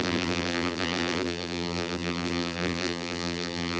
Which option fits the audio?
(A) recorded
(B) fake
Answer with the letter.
B